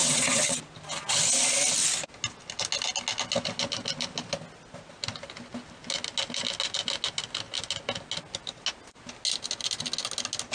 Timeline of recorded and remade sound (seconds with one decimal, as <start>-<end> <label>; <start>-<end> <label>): 0.0-0.6 remade; 0.6-10.5 recorded